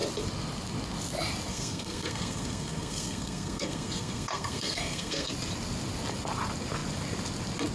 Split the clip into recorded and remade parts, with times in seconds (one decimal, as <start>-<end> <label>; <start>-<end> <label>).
0.0-1.5 recorded; 1.5-5.3 remade; 5.3-7.7 recorded